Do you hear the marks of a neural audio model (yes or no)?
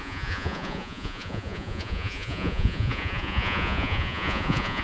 yes